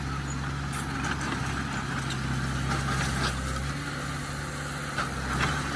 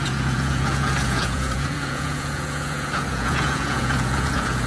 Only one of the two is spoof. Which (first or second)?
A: second